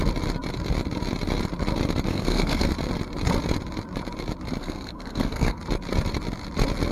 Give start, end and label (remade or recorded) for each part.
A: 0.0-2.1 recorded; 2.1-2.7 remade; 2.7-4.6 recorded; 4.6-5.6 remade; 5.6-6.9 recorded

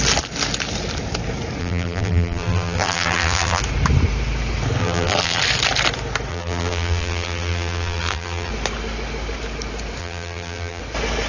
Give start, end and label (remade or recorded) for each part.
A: 0.0-1.6 recorded; 1.6-3.6 remade; 3.6-4.8 recorded; 4.8-5.4 remade; 5.4-6.3 recorded; 6.3-8.5 remade; 8.5-10.0 recorded; 10.0-10.8 remade; 10.8-11.3 recorded

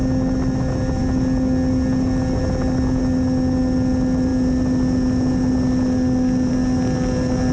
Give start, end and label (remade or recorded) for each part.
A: 0.0-7.5 recorded

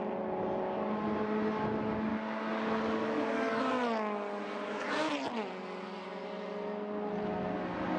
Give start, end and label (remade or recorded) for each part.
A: 0.0-2.1 recorded; 2.1-3.6 remade; 3.6-8.0 recorded

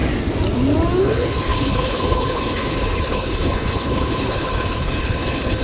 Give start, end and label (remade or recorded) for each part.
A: 0.0-1.0 recorded; 1.0-5.6 remade